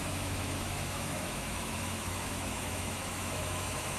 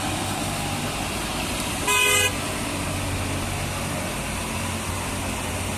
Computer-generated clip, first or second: first